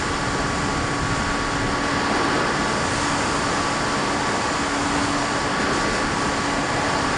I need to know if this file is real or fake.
real